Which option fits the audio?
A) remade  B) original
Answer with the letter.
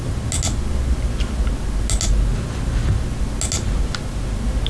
B